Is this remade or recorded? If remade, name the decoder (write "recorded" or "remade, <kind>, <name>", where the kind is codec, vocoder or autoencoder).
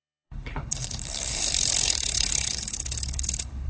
remade, codec, HILCodec